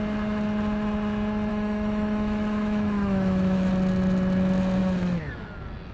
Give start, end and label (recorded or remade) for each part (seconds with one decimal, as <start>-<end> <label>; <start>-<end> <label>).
0.0-1.5 recorded; 1.5-3.7 remade; 3.7-4.8 recorded; 4.8-5.3 remade; 5.3-5.9 recorded